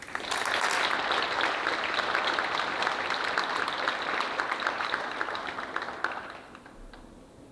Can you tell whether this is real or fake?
real